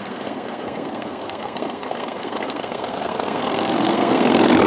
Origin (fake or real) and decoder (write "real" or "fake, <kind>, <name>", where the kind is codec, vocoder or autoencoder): fake, codec, SNAC